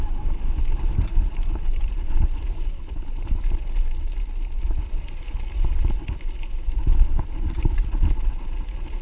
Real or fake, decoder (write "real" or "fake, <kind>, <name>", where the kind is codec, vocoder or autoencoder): real